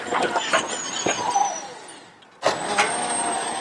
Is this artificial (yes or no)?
no